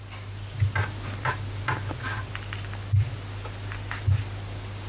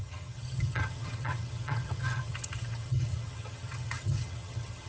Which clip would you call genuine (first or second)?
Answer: first